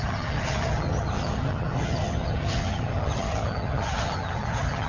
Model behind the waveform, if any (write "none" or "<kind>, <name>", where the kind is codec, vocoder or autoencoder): vocoder, HiFi-GAN